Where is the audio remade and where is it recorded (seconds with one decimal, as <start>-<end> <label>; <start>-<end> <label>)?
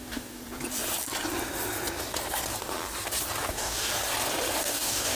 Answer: 0.0-0.4 remade; 0.4-3.5 recorded; 3.5-3.9 remade; 3.9-4.6 recorded; 4.6-5.1 remade